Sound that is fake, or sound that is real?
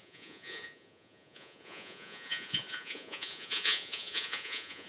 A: fake